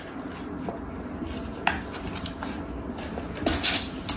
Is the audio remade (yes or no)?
no